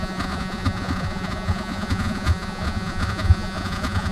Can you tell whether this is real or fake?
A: fake